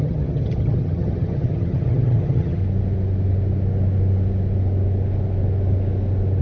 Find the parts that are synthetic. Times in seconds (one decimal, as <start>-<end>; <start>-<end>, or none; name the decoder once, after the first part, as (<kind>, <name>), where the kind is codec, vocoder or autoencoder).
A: 0.0-2.6 (vocoder, HiFi-GAN)